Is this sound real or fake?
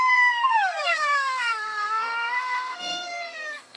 fake